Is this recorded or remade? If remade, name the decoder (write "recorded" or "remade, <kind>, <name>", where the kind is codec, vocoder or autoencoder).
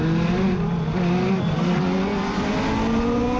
recorded